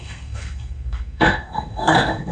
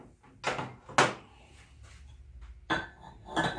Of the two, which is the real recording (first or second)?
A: second